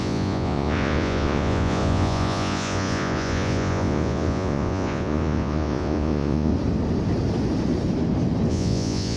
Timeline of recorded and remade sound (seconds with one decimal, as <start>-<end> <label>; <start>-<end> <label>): 0.0-6.5 remade; 6.5-8.5 recorded; 8.5-9.2 remade